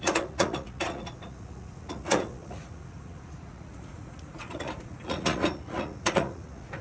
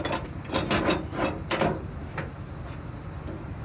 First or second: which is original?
second